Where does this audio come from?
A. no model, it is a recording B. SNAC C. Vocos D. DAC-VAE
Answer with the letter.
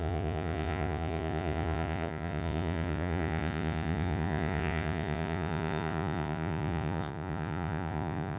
C